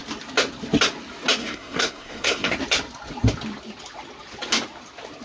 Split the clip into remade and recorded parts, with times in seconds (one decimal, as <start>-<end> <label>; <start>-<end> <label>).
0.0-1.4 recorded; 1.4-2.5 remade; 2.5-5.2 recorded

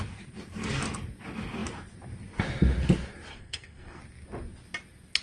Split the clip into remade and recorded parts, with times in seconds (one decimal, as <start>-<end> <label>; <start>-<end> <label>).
0.0-3.3 recorded; 3.3-4.0 remade; 4.0-5.2 recorded

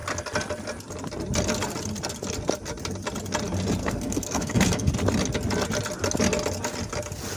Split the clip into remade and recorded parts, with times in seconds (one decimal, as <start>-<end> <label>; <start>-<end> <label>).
0.0-3.8 recorded; 3.8-4.9 remade; 4.9-7.4 recorded

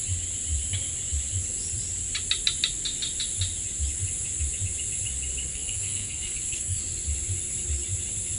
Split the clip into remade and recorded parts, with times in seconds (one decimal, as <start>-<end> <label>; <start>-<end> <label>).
0.0-5.5 recorded; 5.5-6.8 remade; 6.8-8.4 recorded

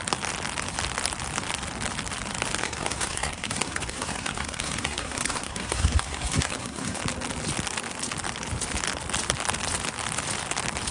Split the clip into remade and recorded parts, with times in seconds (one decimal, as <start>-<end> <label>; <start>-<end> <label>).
0.0-2.6 recorded; 2.6-7.0 remade; 7.0-10.9 recorded

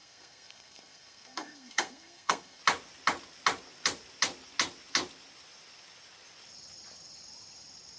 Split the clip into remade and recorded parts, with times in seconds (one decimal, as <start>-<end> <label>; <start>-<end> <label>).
0.0-2.6 remade; 2.6-8.0 recorded